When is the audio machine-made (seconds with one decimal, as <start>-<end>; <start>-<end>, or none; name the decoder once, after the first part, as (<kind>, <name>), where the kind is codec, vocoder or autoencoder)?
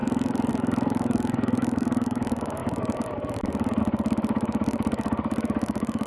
0.0-6.1 (codec, DAC)